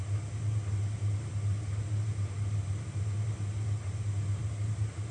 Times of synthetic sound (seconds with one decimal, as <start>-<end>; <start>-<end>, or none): none